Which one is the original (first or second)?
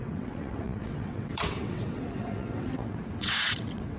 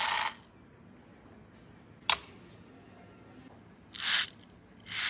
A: second